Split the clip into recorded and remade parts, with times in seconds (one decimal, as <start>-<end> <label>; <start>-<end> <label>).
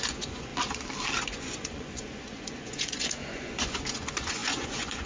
0.0-0.5 remade; 0.5-1.2 recorded; 1.2-5.1 remade